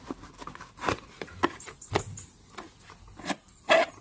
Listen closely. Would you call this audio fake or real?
real